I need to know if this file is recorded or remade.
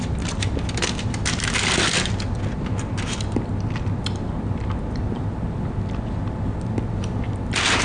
recorded